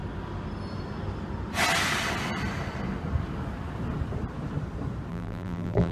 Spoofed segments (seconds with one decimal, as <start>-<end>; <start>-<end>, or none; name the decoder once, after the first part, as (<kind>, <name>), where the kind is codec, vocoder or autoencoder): 5.1-5.9 (vocoder, BigVGAN v2)